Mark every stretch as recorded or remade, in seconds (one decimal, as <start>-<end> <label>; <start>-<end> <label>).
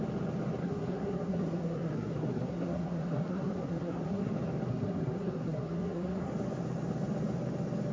0.0-0.6 recorded; 0.6-4.3 remade; 4.3-4.7 recorded; 4.7-6.3 remade; 6.3-7.9 recorded